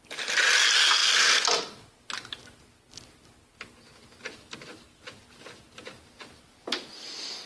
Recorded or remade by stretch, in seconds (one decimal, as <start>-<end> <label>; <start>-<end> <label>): 0.0-7.5 recorded